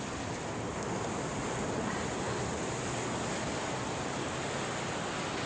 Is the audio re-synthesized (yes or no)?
no